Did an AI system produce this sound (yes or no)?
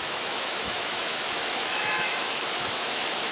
yes